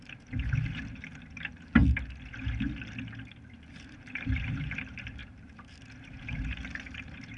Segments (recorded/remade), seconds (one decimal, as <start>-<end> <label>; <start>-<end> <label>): 0.0-1.8 remade; 1.8-3.7 recorded; 3.7-7.4 remade